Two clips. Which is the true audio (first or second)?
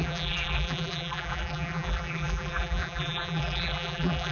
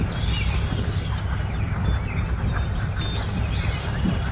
second